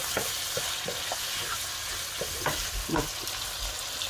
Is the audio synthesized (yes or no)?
no